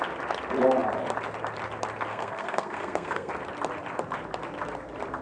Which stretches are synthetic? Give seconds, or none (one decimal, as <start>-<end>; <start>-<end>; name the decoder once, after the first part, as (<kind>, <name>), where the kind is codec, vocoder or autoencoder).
2.1-3.3 (codec, SNAC)